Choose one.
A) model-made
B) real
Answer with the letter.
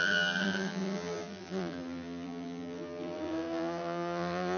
A